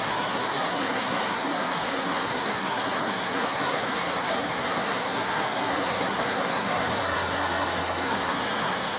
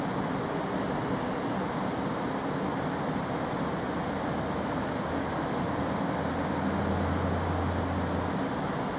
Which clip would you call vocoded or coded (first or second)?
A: first